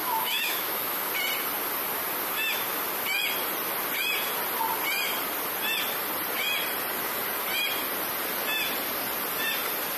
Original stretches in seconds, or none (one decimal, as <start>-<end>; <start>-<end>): 1.1-10.0